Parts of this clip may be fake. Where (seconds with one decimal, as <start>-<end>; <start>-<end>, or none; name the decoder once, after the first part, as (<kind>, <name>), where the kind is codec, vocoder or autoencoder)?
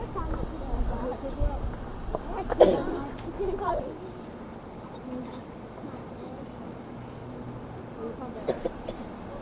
none